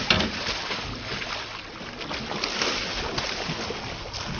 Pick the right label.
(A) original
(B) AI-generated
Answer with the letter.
A